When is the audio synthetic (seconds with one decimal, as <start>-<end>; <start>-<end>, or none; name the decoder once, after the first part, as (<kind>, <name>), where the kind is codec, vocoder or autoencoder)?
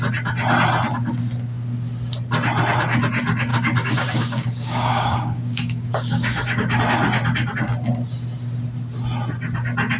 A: 3.5-6.8 (codec, DAC)